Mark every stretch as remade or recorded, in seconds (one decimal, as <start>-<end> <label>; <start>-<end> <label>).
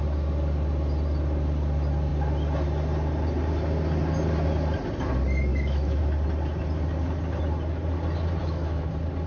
0.0-5.5 recorded; 5.5-6.0 remade; 6.0-8.4 recorded; 8.4-8.9 remade; 8.9-9.3 recorded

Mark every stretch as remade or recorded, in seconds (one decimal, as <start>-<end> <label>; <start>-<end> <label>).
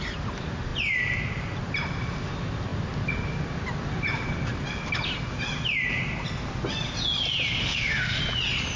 0.0-7.6 recorded; 7.6-8.2 remade; 8.2-8.8 recorded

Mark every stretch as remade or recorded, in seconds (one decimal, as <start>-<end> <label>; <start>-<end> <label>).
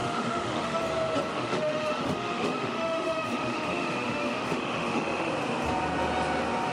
0.0-0.8 remade; 0.8-1.3 recorded; 1.3-5.3 remade; 5.3-6.7 recorded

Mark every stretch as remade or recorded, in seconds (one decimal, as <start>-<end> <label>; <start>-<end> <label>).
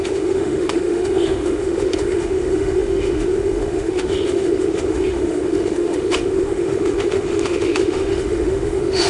0.0-9.1 remade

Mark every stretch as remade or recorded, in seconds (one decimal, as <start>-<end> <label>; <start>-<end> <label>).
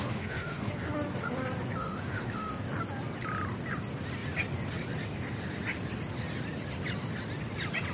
0.0-0.7 remade; 0.7-1.8 recorded; 1.8-2.5 remade; 2.5-7.9 recorded